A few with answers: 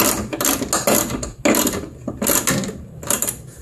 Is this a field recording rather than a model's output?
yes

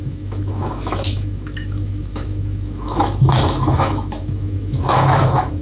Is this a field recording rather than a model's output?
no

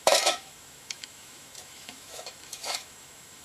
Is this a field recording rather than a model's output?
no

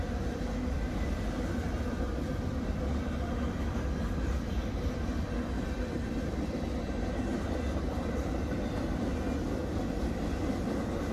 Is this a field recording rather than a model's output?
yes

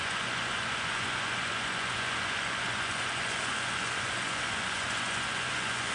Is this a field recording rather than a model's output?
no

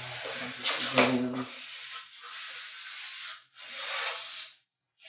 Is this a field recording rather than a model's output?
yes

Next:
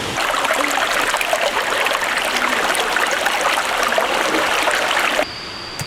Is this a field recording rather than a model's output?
yes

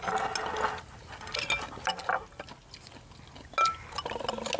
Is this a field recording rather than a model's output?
yes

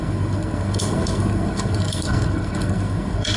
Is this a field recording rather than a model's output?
no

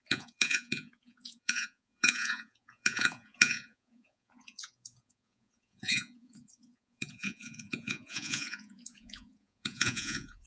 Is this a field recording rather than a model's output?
no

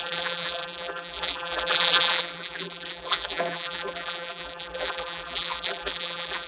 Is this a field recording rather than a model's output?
no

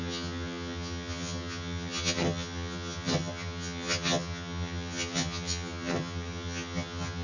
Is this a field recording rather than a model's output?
no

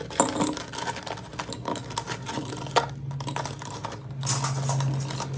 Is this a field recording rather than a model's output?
yes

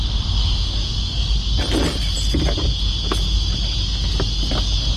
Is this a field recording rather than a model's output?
yes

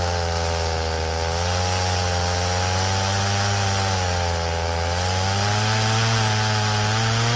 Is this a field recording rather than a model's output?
yes